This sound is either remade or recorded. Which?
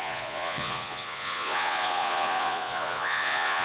remade